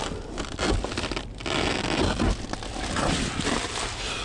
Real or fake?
real